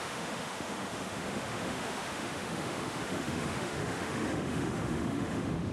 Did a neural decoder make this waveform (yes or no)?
yes